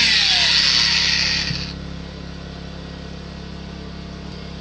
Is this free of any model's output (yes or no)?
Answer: yes